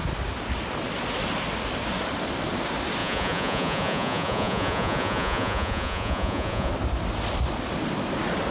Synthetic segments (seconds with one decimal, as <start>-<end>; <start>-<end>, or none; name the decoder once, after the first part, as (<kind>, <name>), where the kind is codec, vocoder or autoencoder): 3.0-6.7 (vocoder, Vocos)